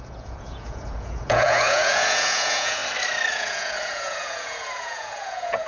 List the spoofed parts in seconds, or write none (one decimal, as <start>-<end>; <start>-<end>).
0.0-2.8; 3.3-5.7